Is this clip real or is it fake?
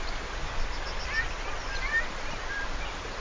real